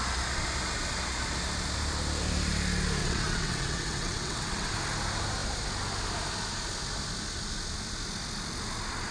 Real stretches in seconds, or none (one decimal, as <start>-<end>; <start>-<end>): 0.0-3.0; 4.7-9.1